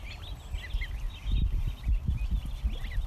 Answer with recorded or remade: recorded